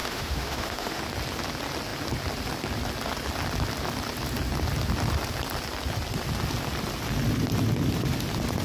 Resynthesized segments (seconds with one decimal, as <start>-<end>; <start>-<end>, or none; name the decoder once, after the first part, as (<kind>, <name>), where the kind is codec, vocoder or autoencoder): 0.0-1.0 (autoencoder, DAC-VAE)